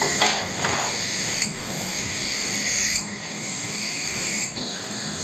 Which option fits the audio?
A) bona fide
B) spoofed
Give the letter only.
B